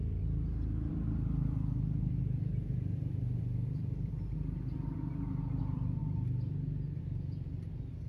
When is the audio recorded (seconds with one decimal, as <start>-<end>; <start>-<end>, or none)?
4.1-5.6; 6.0-7.0

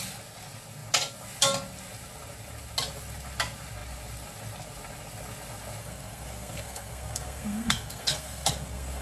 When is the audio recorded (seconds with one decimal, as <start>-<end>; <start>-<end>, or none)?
0.0-5.8